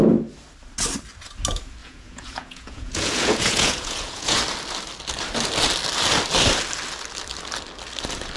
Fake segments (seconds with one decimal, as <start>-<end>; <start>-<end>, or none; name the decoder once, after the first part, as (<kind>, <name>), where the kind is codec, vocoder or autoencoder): 1.8-4.4 (vocoder, Vocos)